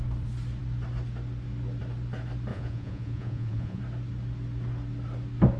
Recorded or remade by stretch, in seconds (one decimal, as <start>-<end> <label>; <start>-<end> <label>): 0.0-2.5 recorded; 2.5-3.8 remade; 3.8-5.6 recorded